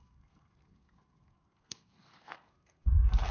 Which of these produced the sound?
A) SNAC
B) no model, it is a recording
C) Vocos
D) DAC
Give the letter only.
A